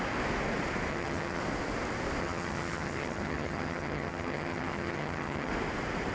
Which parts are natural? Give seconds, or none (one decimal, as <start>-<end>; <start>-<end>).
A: 0.0-0.9; 1.4-2.2; 5.5-6.1